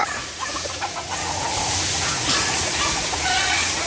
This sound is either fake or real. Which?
fake